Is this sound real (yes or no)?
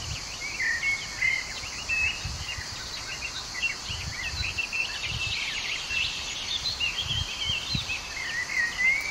yes